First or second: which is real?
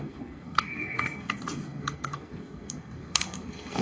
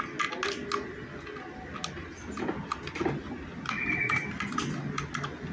second